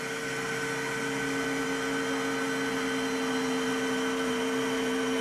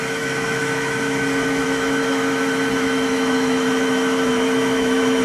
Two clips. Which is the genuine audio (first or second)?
first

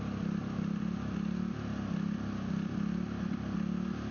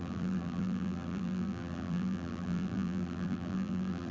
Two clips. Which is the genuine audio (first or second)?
first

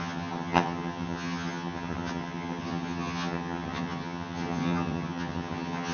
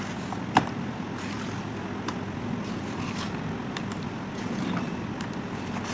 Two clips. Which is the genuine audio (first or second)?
second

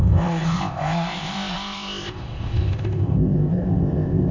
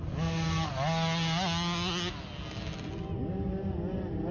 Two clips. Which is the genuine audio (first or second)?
second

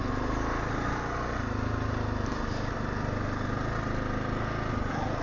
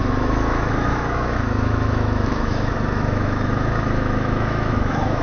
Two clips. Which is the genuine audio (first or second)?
first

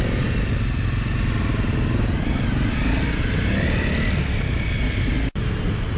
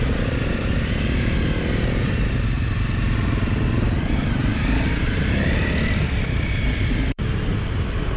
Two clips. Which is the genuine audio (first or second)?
first